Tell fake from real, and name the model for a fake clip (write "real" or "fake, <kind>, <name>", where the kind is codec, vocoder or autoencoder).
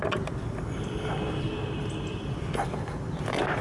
real